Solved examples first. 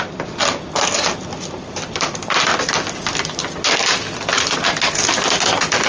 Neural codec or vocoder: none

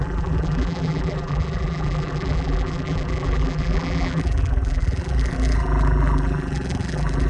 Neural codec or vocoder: vocoder, BigVGAN v2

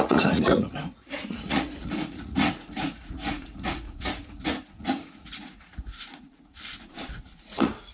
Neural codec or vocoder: vocoder, Vocos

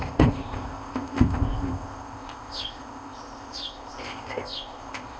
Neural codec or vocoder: codec, ZipCodec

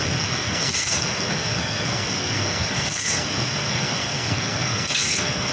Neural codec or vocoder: codec, SNAC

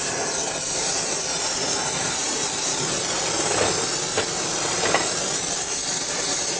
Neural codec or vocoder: none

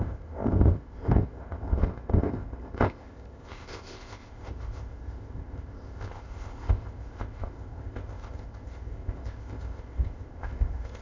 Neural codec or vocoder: codec, ZipCodec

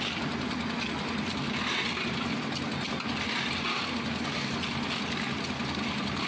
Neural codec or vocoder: none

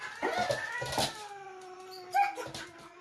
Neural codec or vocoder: none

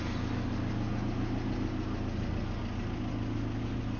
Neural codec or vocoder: none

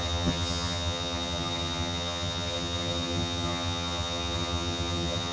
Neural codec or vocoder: vocoder, HiFi-GAN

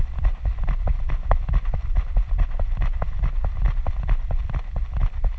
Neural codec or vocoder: none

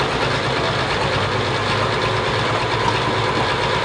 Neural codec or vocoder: none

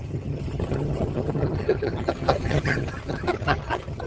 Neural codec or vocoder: vocoder, HiFi-GAN